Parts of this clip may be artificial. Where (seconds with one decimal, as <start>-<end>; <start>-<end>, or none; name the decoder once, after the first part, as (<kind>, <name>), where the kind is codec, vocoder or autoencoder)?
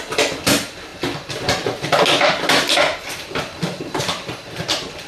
none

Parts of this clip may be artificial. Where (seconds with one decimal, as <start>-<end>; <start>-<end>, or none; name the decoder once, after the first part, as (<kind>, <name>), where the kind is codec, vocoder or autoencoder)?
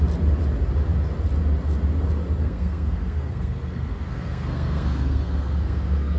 2.4-6.2 (codec, SNAC)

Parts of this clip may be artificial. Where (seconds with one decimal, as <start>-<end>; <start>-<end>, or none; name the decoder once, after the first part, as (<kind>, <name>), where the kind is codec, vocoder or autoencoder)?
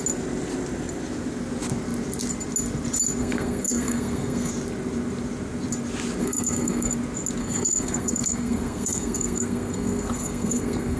3.2-4.5 (codec, SNAC); 6.2-6.9; 7.4-11.0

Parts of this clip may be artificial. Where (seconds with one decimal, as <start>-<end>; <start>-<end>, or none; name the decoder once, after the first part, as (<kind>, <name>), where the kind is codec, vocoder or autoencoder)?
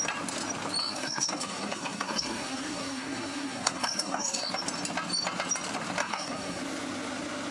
0.8-4.5 (codec, SNAC); 6.0-6.6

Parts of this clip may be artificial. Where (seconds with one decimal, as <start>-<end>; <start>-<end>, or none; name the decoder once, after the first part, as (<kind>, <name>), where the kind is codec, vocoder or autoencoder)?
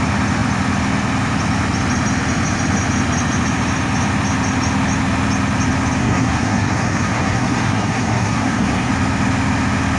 6.0-8.9 (codec, SNAC)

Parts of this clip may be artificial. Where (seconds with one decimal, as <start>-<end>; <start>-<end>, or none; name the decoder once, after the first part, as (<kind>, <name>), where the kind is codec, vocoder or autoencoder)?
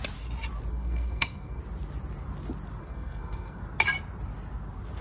0.7-1.6 (codec, SNAC); 2.8-3.6